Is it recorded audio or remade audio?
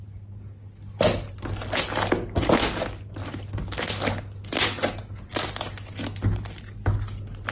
recorded